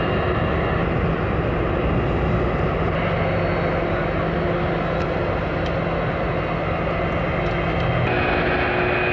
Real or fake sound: real